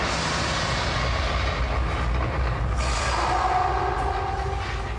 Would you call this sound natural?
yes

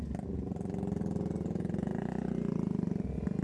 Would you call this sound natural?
yes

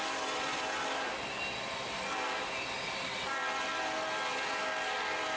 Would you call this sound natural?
yes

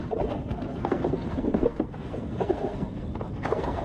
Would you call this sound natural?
no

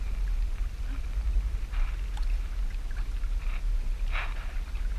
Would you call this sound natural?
yes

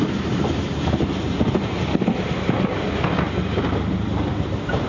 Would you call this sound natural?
yes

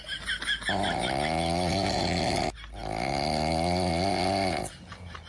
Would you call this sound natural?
yes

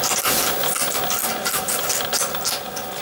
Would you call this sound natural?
yes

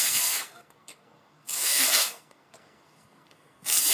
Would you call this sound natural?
no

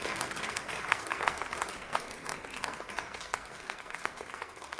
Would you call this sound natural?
no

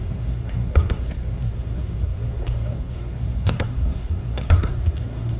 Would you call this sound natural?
no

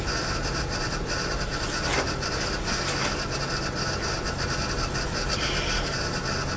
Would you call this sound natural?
yes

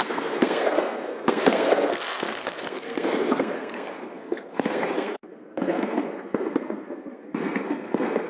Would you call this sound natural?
no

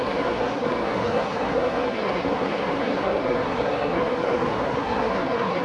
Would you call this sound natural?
no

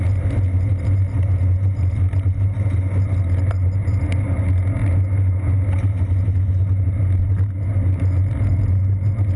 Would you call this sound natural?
yes